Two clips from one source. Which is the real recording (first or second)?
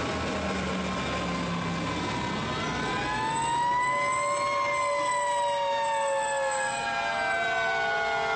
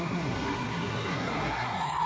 first